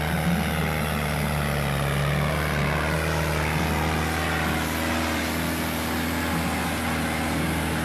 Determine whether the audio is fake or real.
real